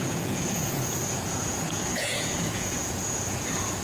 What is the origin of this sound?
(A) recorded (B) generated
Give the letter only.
B